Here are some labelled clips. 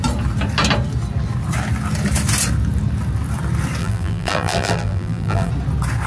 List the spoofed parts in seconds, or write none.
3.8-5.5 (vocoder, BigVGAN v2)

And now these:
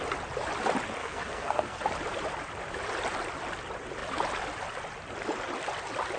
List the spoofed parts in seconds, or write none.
1.0-1.8 (codec, SNAC)

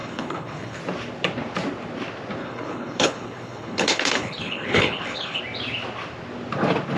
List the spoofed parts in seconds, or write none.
0.0-0.8 (codec, HILCodec); 2.4-5.4

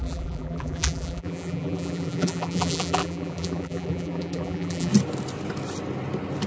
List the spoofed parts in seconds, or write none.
0.0-4.9 (vocoder, BigVGAN v2)

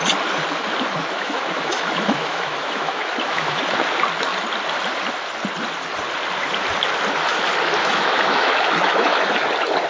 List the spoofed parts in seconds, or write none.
1.0-3.6 (autoencoder, DAC-VAE); 7.8-9.5

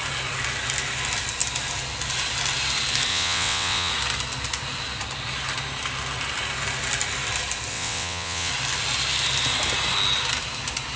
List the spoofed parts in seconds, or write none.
3.1-3.9 (vocoder, WaveNeXt); 7.7-8.5

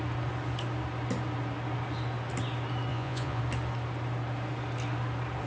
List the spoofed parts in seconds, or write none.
2.9-3.4 (vocoder, Vocos)

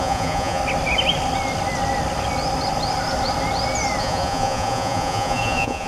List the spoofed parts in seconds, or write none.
0.0-0.6 (vocoder, Vocos); 4.0-5.9